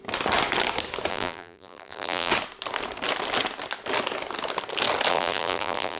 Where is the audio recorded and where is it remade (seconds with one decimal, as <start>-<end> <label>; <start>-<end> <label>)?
0.0-1.1 recorded; 1.1-2.3 remade; 2.3-5.1 recorded; 5.1-6.0 remade